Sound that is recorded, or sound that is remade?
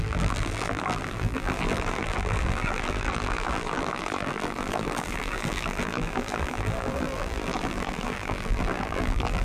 remade